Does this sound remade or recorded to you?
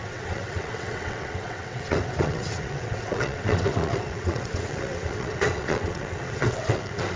remade